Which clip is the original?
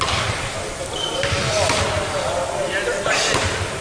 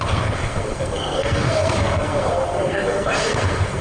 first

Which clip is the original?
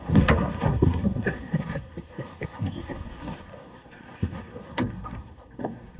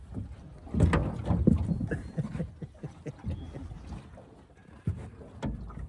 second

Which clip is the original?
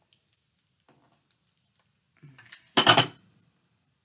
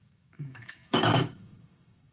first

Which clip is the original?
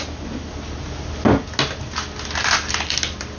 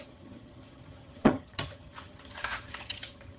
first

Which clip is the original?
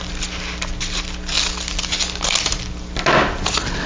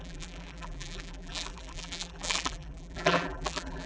first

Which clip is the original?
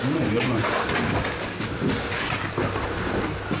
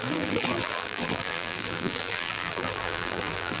first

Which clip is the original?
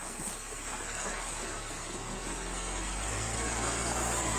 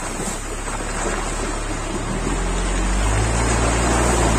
second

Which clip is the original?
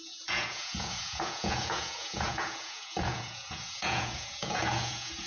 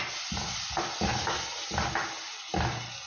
second